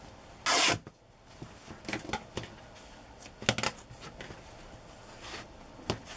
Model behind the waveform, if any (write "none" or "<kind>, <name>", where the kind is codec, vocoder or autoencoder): none